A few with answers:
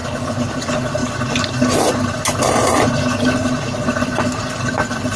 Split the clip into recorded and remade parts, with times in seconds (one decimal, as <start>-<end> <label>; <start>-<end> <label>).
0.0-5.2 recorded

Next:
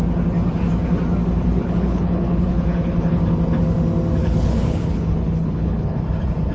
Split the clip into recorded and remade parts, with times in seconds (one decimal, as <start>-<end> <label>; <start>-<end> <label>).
0.0-1.6 recorded; 1.6-3.2 remade; 3.2-4.2 recorded; 4.2-6.0 remade; 6.0-6.5 recorded

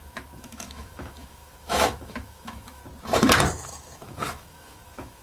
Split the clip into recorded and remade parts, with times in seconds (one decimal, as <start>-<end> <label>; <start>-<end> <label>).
0.0-2.8 remade; 2.8-3.7 recorded; 3.7-5.2 remade